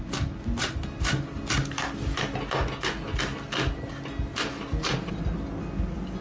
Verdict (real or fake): real